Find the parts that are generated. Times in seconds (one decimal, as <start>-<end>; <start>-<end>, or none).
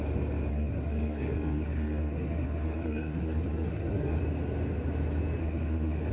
0.5-4.2; 5.4-6.1